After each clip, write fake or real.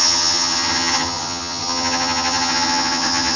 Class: fake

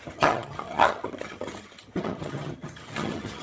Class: fake